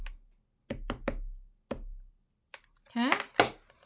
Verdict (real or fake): real